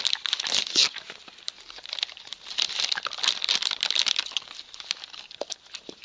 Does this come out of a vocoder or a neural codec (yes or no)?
no